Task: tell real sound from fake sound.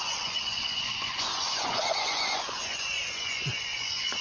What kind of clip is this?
fake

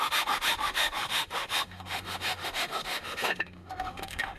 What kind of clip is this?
fake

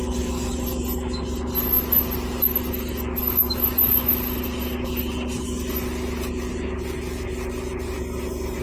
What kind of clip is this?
real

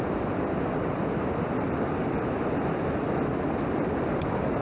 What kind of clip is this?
real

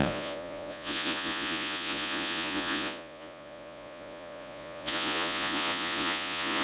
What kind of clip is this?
fake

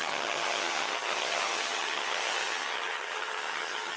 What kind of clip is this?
fake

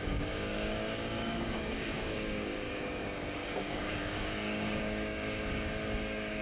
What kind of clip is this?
fake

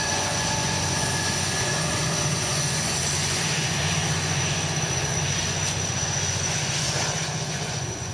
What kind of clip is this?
fake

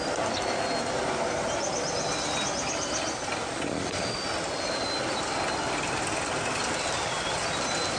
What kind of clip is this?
real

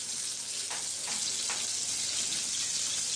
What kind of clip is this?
real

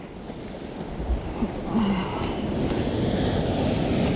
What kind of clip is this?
real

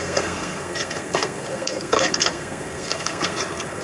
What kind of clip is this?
fake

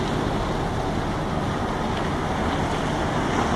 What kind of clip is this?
real